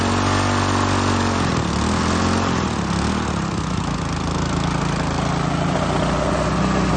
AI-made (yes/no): no